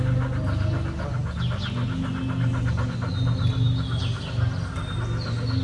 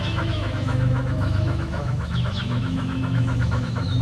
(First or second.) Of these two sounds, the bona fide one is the first